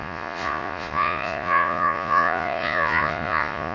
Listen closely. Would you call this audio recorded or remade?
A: remade